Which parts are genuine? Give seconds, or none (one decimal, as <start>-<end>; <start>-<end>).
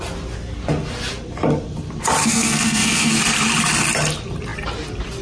0.0-2.2; 3.2-5.2